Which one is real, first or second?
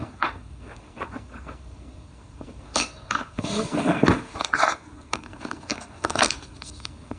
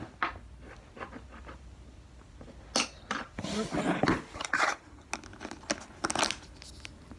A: second